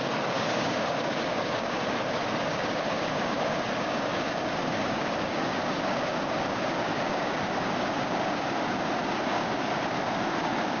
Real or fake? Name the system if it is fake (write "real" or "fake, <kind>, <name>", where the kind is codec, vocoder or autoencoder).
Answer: fake, codec, DAC